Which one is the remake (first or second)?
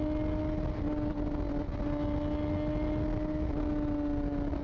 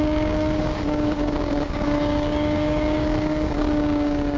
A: second